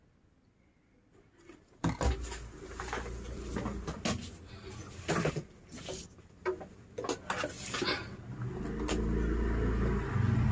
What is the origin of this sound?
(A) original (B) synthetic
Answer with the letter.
A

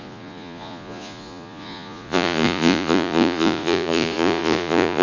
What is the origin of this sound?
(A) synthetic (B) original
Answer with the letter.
A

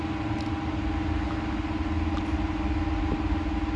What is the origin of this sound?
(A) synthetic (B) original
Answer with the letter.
B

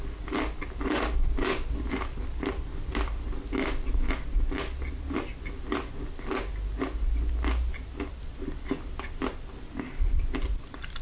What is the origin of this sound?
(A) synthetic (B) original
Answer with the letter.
B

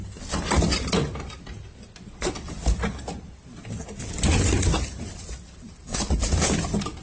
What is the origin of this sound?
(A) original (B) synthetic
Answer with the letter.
A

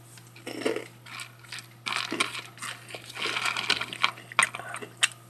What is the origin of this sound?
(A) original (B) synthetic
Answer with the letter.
A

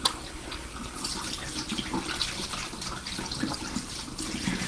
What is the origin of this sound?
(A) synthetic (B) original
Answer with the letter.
B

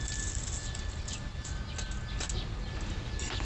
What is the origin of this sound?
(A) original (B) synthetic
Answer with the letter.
A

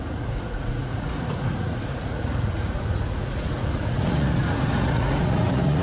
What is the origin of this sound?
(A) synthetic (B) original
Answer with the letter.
A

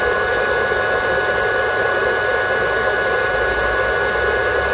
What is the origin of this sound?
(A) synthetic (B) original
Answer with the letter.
B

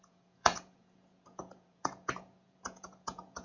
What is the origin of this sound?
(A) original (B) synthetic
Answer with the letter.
B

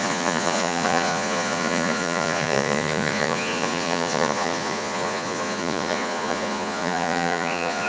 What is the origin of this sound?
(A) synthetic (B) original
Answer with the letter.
A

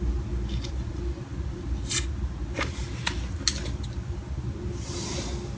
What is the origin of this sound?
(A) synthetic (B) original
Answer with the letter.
B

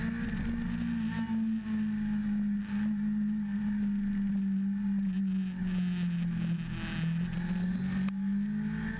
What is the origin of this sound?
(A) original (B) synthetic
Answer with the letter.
A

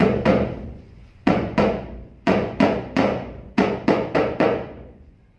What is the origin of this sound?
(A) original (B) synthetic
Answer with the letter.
B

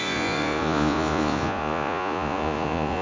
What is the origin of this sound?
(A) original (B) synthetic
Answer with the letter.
B